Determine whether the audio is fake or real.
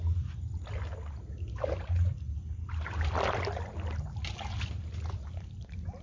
real